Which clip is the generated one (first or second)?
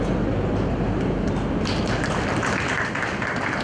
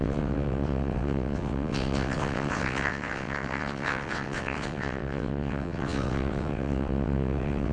second